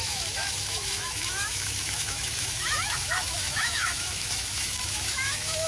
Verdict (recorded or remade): remade